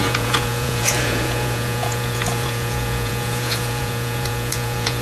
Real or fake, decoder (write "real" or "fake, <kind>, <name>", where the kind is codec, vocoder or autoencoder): fake, vocoder, Vocos